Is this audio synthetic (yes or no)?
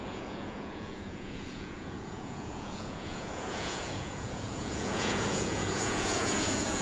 yes